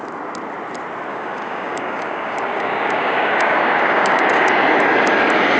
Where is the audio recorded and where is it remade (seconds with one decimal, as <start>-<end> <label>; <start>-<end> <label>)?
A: 0.0-1.1 recorded; 1.1-4.5 remade; 4.5-5.6 recorded